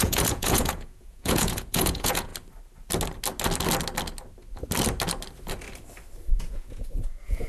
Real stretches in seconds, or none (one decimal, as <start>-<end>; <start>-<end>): 2.3-6.3